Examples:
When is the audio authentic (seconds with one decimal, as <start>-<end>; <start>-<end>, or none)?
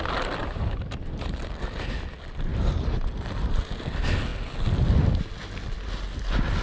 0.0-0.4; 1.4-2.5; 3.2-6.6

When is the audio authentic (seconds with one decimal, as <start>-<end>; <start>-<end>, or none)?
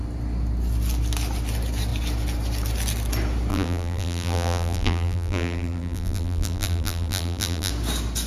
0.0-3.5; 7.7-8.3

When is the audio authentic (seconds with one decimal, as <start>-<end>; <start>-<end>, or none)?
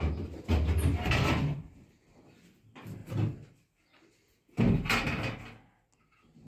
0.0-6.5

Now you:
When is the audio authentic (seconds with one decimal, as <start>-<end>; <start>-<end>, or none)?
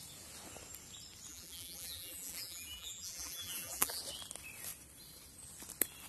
0.0-1.3; 4.0-6.1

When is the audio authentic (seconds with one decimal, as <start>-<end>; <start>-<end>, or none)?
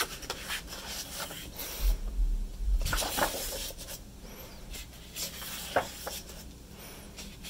0.0-1.6; 2.1-2.5; 4.7-7.5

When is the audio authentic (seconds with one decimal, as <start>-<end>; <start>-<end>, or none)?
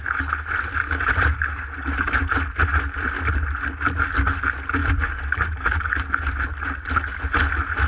0.0-7.9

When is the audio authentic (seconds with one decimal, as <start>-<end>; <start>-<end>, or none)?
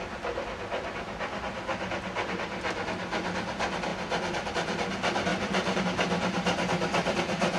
0.0-5.3; 5.8-7.6